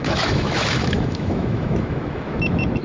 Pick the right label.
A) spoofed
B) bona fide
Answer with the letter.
A